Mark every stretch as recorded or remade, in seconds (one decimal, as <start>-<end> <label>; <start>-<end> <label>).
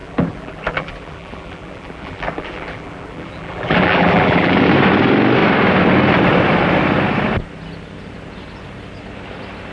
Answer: 0.0-4.7 remade; 4.7-9.7 recorded